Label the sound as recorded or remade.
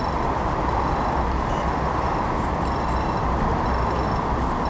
recorded